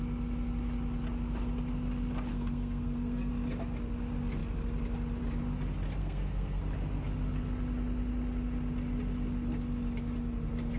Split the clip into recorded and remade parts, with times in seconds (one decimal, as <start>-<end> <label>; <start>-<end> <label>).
0.0-2.3 recorded; 2.3-3.3 remade; 3.3-6.0 recorded; 6.0-6.6 remade; 6.6-10.8 recorded